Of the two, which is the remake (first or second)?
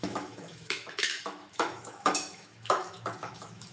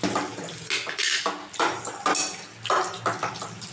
first